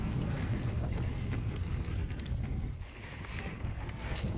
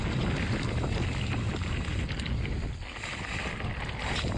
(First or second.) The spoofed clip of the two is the first